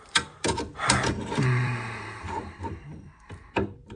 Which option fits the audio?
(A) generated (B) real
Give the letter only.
A